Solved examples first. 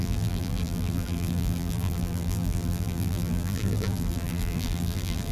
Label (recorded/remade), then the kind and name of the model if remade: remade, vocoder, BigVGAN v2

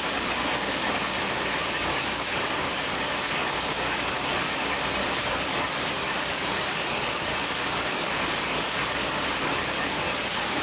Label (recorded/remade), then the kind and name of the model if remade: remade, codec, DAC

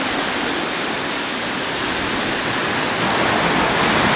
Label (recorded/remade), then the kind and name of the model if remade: recorded